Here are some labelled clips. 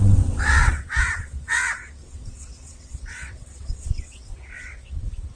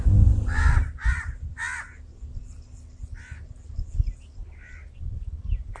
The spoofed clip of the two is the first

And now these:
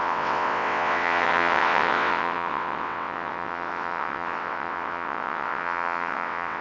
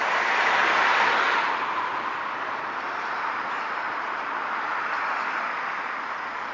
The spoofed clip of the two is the first